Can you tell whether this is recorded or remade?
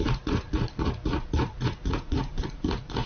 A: remade